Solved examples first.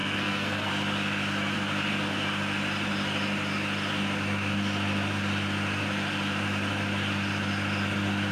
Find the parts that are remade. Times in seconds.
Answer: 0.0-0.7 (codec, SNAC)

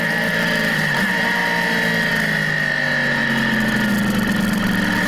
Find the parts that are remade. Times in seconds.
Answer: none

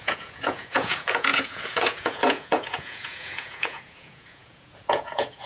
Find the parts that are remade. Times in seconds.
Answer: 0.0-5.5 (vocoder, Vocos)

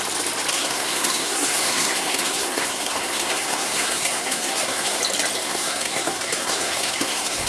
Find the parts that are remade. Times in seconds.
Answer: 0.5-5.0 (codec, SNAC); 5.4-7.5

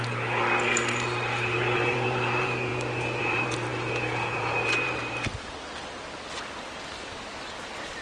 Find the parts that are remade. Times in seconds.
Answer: 0.0-2.7 (vocoder, BigVGAN v2); 3.2-5.3